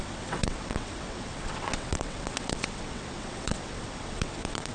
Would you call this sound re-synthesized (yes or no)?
yes